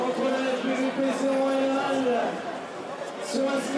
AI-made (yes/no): no